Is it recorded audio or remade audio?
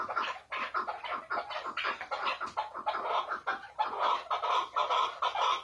remade